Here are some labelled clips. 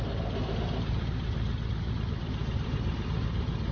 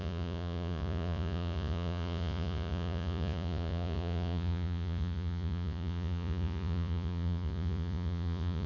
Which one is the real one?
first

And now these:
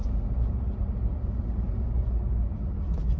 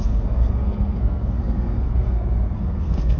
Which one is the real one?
first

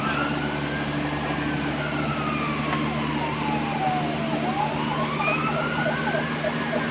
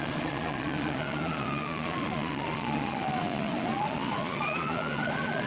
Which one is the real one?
first